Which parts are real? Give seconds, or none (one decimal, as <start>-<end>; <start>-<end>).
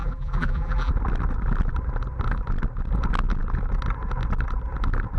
0.9-5.2